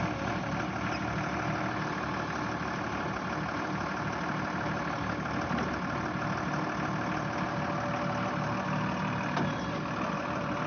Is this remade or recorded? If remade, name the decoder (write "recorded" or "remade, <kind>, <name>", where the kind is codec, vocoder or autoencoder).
recorded